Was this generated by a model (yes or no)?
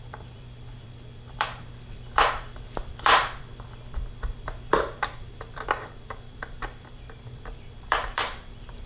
yes